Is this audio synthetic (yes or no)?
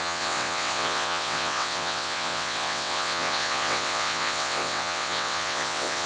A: yes